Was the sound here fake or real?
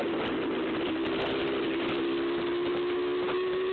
real